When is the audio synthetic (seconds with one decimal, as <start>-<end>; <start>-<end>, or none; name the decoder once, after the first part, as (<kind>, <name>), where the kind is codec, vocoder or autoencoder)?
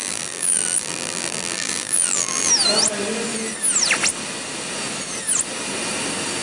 0.0-2.5 (vocoder, BigVGAN v2)